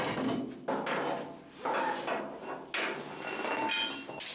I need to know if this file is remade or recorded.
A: recorded